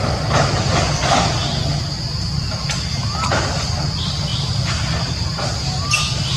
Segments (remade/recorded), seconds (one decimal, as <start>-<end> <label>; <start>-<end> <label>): 0.0-6.4 recorded

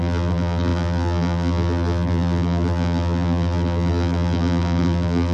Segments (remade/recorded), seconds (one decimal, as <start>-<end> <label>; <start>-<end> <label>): 0.0-5.3 remade

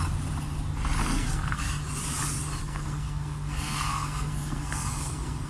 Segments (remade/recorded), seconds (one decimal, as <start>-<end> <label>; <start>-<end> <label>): 0.0-1.0 recorded; 1.0-1.7 remade; 1.7-2.6 recorded; 2.6-5.5 remade

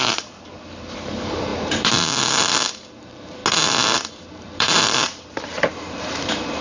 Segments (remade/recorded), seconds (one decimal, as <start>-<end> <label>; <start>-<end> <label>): 0.0-3.4 remade; 3.4-4.1 recorded; 4.1-6.6 remade

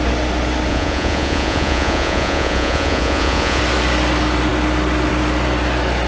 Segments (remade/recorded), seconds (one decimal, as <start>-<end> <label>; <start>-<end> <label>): 0.0-0.7 recorded; 0.7-3.6 remade; 3.6-6.1 recorded

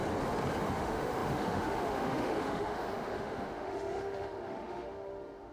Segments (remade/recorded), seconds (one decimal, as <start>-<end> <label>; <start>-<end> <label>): 0.0-0.6 recorded; 0.6-5.5 remade

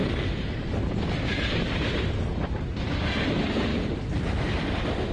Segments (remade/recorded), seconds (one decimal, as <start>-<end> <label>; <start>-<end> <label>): 0.0-1.8 remade; 1.8-3.7 recorded; 3.7-4.6 remade; 4.6-5.1 recorded